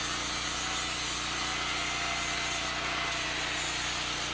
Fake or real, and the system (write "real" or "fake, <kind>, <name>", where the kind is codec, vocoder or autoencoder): real